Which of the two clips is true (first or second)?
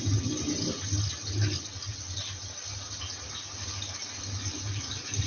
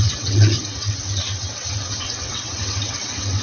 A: first